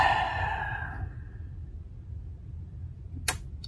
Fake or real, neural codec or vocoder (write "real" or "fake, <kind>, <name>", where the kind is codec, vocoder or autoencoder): real